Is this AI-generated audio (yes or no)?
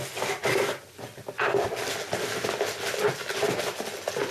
no